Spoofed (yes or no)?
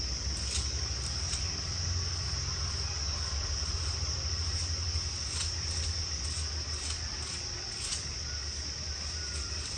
no